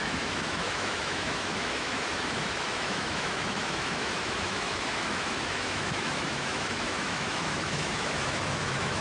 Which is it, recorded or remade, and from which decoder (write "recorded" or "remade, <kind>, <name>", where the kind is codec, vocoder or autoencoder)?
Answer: remade, autoencoder, DAC-VAE